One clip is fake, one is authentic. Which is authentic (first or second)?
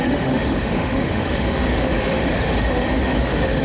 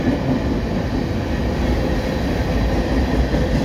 second